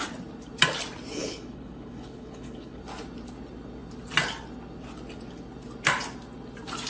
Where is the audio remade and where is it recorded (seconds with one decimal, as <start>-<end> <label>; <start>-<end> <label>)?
0.0-1.1 recorded; 1.1-2.8 remade; 2.8-6.9 recorded